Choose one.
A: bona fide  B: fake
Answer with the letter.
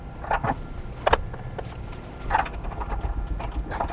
A